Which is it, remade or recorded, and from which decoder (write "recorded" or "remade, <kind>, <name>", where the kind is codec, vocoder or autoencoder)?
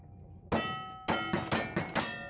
recorded